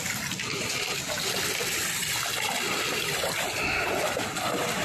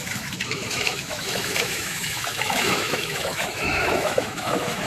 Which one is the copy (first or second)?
second